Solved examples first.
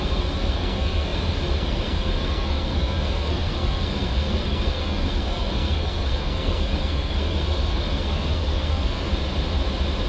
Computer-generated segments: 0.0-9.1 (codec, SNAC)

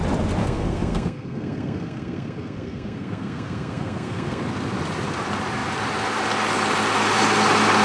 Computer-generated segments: 0.4-4.4 (codec, SNAC)

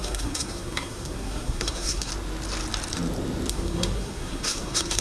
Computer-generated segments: 0.0-2.1 (codec, SNAC); 3.5-5.0

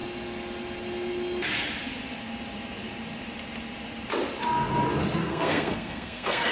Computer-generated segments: 5.2-6.5 (codec, SNAC)

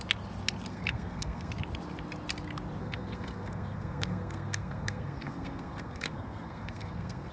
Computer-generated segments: 0.7-1.5 (codec, SNAC); 2.8-7.3

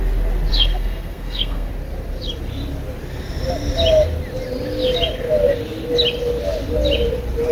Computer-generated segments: 0.5-1.7 (codec, SNAC)

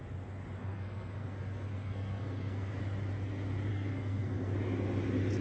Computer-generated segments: 0.6-2.8 (codec, SNAC); 3.7-4.5

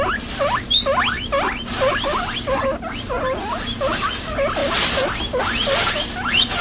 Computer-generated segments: none